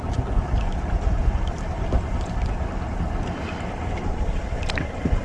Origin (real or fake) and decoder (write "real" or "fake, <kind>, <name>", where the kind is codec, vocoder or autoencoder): real